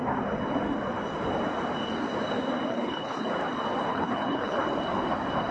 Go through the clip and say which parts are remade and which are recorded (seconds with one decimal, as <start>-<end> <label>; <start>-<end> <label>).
0.0-2.7 recorded; 2.7-3.3 remade; 3.3-3.9 recorded; 3.9-4.6 remade; 4.6-5.5 recorded